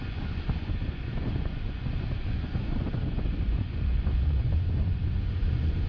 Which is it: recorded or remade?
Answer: remade